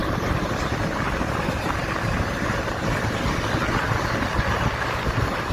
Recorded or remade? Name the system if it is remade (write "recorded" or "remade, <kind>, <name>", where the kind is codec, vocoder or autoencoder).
remade, vocoder, BigVGAN v2